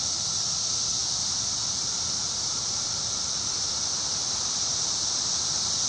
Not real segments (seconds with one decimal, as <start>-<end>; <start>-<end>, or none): 1.0-4.5